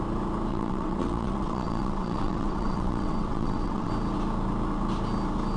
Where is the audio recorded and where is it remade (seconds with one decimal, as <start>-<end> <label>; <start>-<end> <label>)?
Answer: 0.0-0.5 recorded; 0.5-3.9 remade; 3.9-5.6 recorded